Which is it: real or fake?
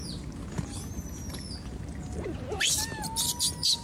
real